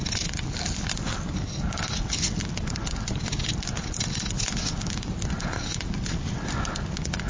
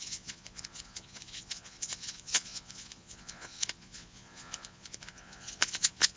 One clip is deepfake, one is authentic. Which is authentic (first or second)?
first